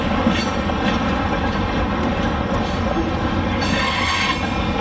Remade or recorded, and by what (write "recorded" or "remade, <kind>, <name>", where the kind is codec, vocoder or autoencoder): recorded